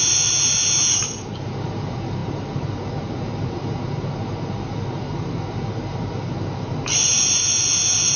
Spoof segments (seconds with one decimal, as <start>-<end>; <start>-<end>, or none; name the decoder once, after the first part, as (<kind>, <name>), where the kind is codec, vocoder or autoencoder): 0.0-8.2 (vocoder, BigVGAN v2)